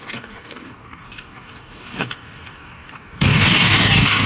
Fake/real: fake